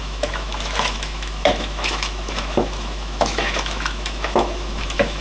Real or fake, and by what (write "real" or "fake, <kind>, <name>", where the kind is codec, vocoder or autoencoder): fake, autoencoder, DAC-VAE